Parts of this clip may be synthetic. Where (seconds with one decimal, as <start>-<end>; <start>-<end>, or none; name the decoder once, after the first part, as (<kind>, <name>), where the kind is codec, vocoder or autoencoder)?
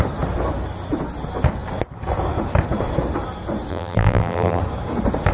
3.7-4.6 (vocoder, BigVGAN v2)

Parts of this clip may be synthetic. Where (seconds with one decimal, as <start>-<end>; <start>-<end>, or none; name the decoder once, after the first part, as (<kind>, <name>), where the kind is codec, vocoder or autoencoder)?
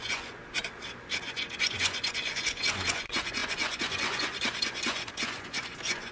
0.0-0.4 (vocoder, Vocos); 1.2-6.1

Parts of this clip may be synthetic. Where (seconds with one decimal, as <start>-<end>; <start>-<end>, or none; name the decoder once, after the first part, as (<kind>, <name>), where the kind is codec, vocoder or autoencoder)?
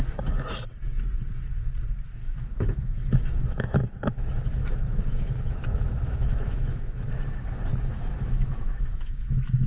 2.2-7.1 (autoencoder, DAC-VAE); 7.7-9.7